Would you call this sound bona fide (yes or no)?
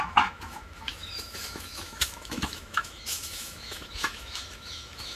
no